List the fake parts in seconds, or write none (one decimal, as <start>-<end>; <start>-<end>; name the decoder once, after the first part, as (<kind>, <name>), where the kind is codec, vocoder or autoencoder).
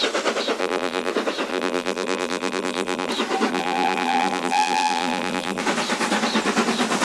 0.6-1.1 (vocoder, BigVGAN v2); 1.5-3.1; 3.5-5.6